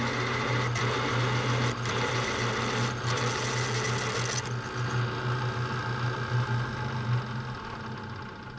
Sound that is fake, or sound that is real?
real